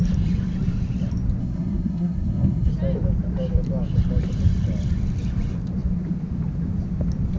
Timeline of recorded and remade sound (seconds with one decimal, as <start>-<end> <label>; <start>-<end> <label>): 0.0-1.4 recorded; 1.4-2.7 remade; 2.7-7.4 recorded